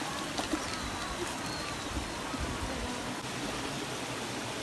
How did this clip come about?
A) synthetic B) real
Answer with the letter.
B